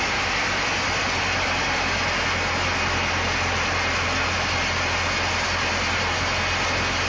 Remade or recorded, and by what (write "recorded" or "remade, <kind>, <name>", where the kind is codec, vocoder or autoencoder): recorded